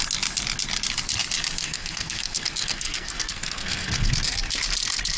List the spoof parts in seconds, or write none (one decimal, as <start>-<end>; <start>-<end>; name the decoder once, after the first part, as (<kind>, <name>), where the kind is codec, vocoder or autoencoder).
1.6-4.1 (codec, SNAC)